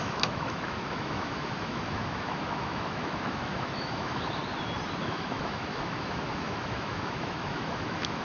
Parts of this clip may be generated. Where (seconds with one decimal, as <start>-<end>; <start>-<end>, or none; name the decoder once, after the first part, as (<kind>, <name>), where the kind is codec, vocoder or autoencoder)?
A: 0.0-4.4 (autoencoder, DAC-VAE); 5.0-8.2